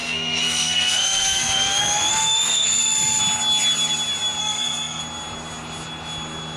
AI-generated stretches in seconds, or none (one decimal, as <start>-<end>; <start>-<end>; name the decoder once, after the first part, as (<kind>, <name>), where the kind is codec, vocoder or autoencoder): 0.0-3.2 (codec, SNAC); 4.4-5.0